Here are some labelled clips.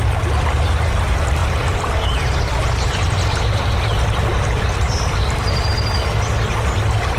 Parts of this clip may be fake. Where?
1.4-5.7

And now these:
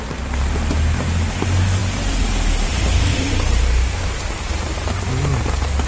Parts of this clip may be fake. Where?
3.1-5.0

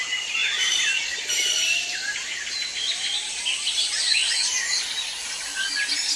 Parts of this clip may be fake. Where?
0.4-3.4

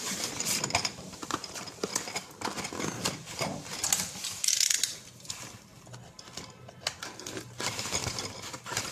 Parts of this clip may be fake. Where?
0.0-1.9; 5.3-5.7; 7.0-8.9

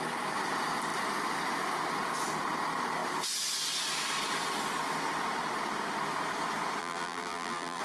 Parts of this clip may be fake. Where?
6.8-7.8

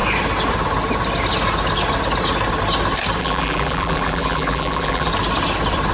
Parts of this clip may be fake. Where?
3.2-5.1

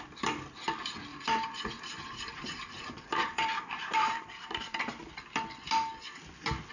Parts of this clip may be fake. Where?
1.1-5.1

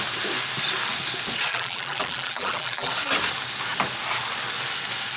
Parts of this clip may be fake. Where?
1.5-2.9